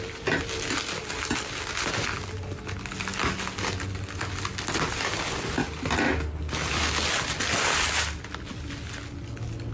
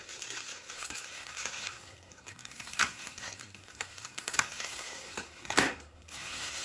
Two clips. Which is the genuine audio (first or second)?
first